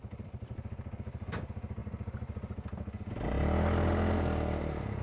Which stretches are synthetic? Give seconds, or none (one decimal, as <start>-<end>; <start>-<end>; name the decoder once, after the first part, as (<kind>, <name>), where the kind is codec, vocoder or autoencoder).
none